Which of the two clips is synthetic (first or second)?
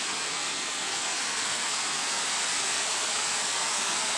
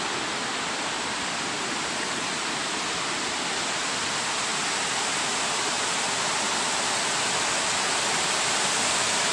first